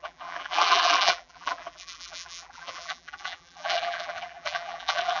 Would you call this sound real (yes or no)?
no